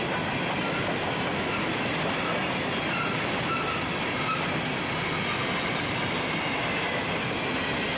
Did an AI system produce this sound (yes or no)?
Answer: no